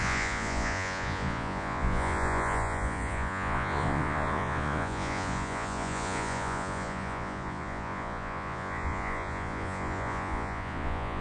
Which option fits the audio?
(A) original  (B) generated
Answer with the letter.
B